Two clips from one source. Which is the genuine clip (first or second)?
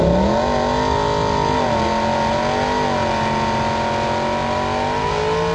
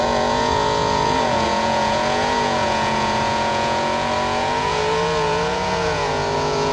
first